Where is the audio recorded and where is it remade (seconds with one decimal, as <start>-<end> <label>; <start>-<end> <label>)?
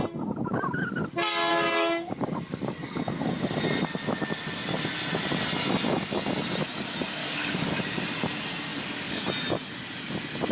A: 0.0-1.5 recorded; 1.5-3.0 remade; 3.0-7.2 recorded; 7.2-7.8 remade; 7.8-8.7 recorded; 8.7-9.2 remade; 9.2-10.5 recorded